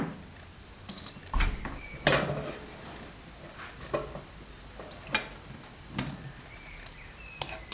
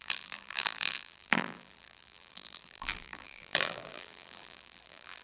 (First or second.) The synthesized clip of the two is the second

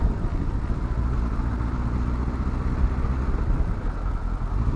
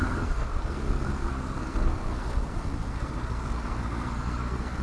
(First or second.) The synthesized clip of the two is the second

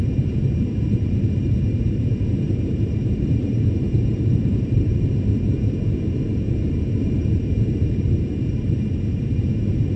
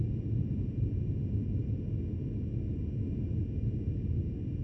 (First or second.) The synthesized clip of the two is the first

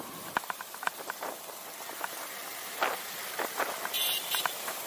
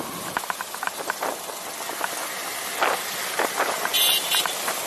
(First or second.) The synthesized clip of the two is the first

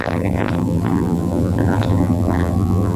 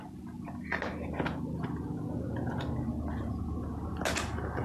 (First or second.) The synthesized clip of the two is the first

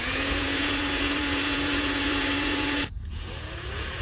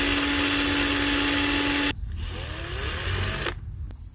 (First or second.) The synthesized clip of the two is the first